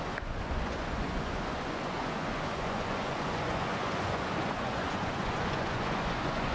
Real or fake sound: fake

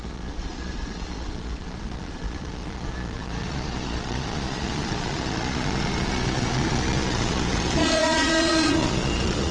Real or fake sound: fake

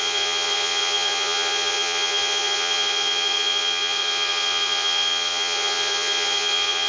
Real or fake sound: fake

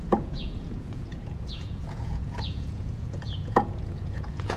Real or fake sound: fake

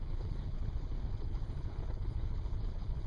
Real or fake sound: fake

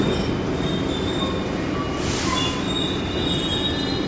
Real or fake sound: real